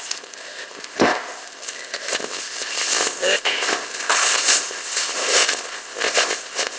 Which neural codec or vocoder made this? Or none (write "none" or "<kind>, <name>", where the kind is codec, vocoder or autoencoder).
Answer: codec, ZipCodec